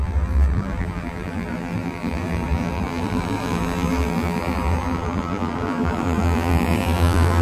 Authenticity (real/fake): fake